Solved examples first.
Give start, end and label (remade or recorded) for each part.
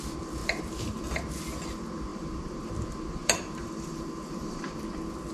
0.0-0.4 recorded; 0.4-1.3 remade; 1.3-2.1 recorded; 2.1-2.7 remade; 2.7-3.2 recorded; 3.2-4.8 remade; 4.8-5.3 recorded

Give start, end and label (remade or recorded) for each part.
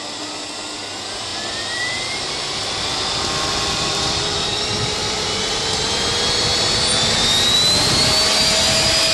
0.0-1.3 recorded; 1.3-5.9 remade; 5.9-9.1 recorded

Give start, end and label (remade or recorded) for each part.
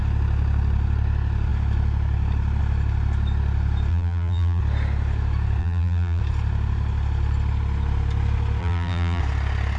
0.0-3.9 recorded; 3.9-4.6 remade; 4.6-5.6 recorded; 5.6-6.2 remade; 6.2-8.6 recorded; 8.6-9.2 remade; 9.2-9.8 recorded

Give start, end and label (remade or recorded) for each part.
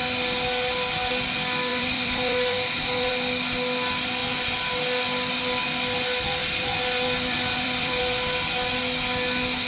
0.0-1.7 recorded; 1.7-3.1 remade; 3.1-6.4 recorded; 6.4-8.0 remade; 8.0-9.7 recorded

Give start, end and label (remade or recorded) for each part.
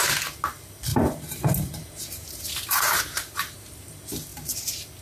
0.0-0.9 recorded; 0.9-3.9 remade; 3.9-4.3 recorded; 4.3-5.0 remade